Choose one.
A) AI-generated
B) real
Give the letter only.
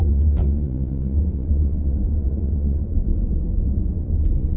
A